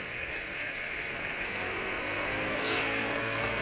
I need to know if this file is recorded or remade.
remade